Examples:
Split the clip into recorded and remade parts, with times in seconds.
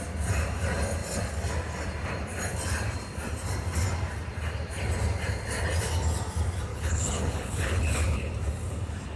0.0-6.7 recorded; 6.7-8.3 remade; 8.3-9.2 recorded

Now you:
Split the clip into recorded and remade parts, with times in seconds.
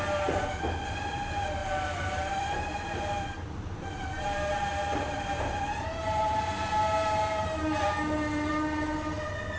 0.0-1.6 recorded; 1.6-6.4 remade; 6.4-9.6 recorded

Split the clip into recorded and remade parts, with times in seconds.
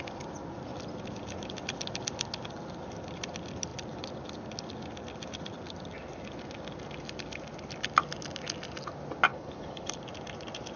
0.0-9.3 recorded; 9.3-10.0 remade; 10.0-10.8 recorded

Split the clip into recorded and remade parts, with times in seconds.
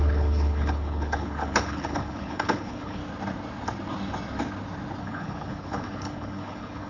0.0-3.0 remade; 3.0-5.0 recorded; 5.0-6.9 remade